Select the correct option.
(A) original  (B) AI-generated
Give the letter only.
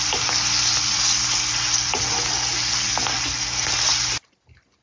A